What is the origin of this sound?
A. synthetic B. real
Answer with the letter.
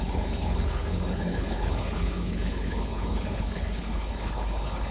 A